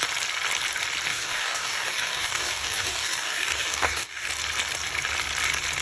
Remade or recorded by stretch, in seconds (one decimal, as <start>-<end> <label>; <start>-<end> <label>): 0.0-1.1 recorded; 1.1-4.3 remade; 4.3-5.8 recorded